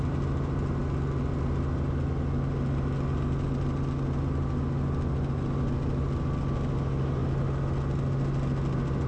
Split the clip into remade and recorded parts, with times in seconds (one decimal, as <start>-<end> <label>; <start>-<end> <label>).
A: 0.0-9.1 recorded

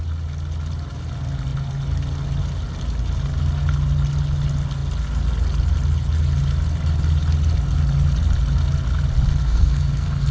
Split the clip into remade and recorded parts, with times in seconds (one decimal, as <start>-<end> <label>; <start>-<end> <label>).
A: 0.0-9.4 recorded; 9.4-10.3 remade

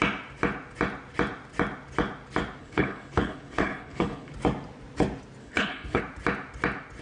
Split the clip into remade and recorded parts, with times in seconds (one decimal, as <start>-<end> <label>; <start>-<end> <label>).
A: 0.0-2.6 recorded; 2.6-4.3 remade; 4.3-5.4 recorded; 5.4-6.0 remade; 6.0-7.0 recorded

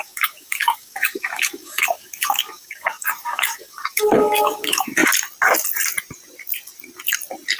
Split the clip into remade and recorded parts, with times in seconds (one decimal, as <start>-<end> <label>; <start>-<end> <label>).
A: 0.0-5.0 remade; 5.0-7.6 recorded

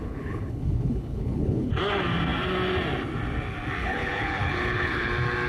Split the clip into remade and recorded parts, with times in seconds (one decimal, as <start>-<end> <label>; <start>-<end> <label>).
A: 0.0-1.7 remade; 1.7-3.8 recorded; 3.8-5.1 remade; 5.1-5.5 recorded

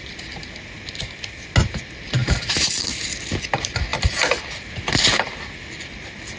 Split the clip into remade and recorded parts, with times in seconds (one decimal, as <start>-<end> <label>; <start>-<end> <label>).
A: 0.0-2.2 recorded; 2.2-2.8 remade; 2.8-6.4 recorded

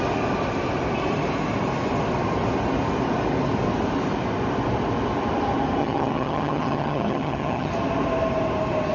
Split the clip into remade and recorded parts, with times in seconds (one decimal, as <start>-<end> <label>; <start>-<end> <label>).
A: 0.0-5.8 recorded; 5.8-7.7 remade; 7.7-8.9 recorded

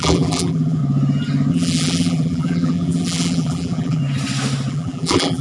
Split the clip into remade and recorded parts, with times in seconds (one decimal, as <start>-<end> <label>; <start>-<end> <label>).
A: 0.0-0.8 remade; 0.8-1.5 recorded; 1.5-4.0 remade; 4.0-4.7 recorded; 4.7-5.4 remade